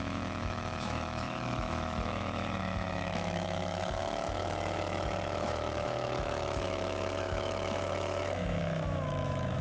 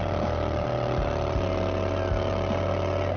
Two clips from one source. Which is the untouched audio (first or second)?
second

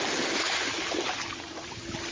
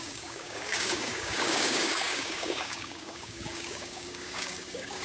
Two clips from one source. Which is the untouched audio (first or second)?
first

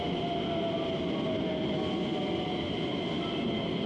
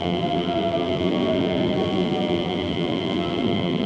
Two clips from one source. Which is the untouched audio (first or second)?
first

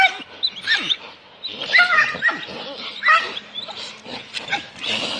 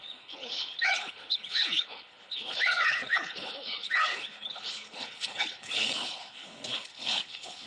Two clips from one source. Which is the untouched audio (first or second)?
first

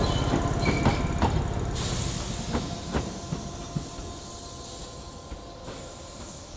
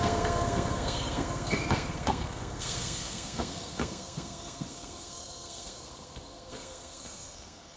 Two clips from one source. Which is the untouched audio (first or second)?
first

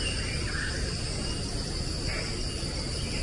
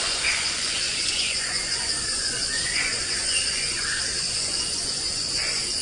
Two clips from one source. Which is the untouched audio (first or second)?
first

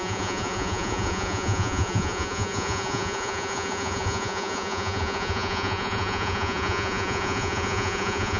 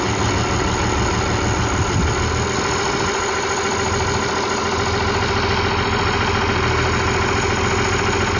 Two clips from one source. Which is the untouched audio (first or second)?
second